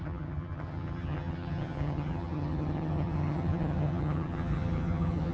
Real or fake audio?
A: fake